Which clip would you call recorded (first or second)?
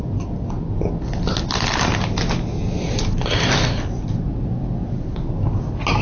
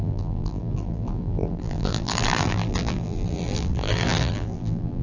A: first